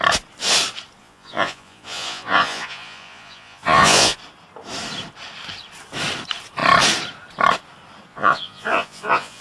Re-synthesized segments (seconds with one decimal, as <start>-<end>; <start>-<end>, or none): 1.0-4.2; 8.1-9.4